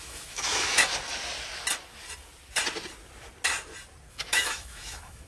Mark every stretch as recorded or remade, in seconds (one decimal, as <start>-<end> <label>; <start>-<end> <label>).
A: 0.0-0.9 remade; 0.9-4.1 recorded; 4.1-5.3 remade